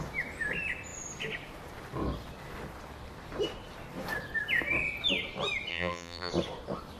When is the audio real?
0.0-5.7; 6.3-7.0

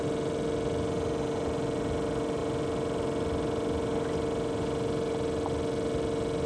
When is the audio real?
0.0-6.5

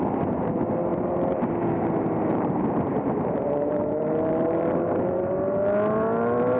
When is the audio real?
0.0-0.9; 1.5-2.2; 5.3-6.6

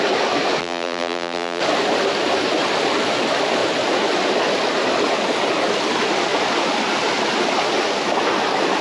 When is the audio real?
0.0-0.6; 1.6-8.8